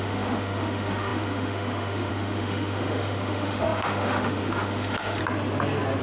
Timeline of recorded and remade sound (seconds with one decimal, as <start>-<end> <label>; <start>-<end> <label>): 0.0-5.2 remade; 5.2-6.0 recorded